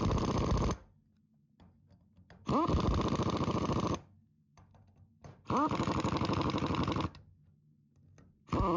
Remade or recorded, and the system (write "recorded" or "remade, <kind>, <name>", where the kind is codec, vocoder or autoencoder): recorded